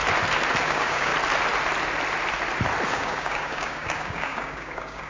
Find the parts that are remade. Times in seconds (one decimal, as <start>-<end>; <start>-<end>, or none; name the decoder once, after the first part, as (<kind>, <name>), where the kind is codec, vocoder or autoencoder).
0.6-1.1 (codec, DAC); 2.9-5.1